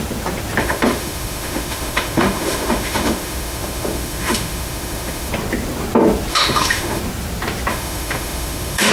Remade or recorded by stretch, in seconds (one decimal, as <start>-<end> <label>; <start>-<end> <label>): 0.0-0.6 recorded; 0.6-5.3 remade; 5.3-6.3 recorded; 6.3-7.0 remade; 7.0-7.7 recorded; 7.7-8.9 remade